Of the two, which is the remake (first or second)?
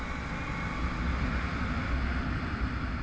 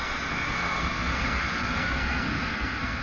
second